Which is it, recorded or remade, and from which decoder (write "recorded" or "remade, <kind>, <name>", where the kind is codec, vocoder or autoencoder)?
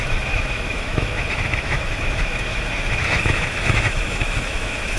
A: remade, autoencoder, DAC-VAE